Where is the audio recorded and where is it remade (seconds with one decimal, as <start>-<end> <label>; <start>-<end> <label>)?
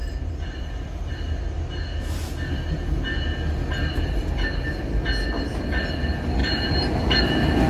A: 0.0-1.1 remade; 1.1-6.4 recorded; 6.4-7.2 remade; 7.2-7.7 recorded